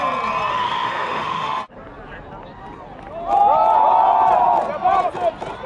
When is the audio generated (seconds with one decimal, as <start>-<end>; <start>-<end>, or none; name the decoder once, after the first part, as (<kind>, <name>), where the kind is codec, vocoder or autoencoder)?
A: 0.5-1.6 (autoencoder, DAC-VAE)